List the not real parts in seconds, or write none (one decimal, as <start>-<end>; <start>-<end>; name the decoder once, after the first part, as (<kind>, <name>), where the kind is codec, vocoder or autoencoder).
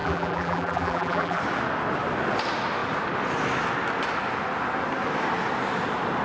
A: 0.0-1.4 (vocoder, BigVGAN v2)